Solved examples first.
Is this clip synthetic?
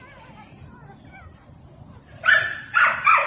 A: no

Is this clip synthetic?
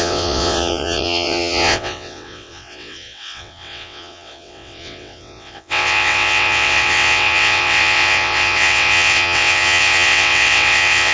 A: yes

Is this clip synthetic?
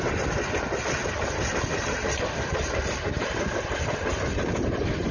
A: no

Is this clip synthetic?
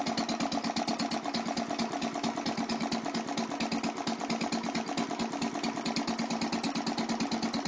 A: no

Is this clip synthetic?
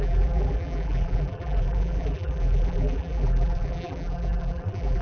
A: yes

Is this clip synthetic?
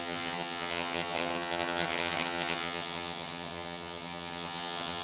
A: yes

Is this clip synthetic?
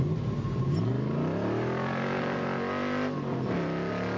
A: no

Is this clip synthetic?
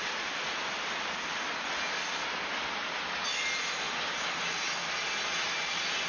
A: no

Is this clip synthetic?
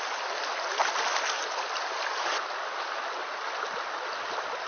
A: no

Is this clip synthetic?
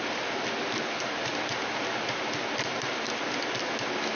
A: no